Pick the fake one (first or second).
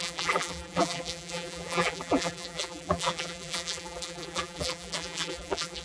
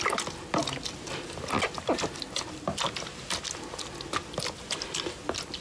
first